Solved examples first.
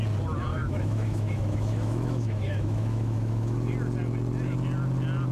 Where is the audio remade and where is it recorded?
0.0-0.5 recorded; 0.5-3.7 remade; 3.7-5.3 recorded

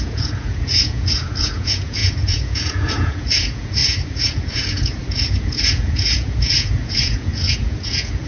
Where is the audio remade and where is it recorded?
0.0-8.3 remade

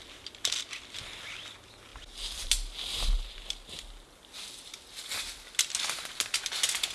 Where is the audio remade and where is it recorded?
0.0-6.9 recorded

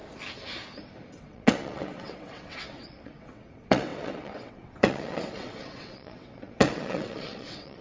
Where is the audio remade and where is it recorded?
0.0-1.1 recorded; 1.1-7.8 remade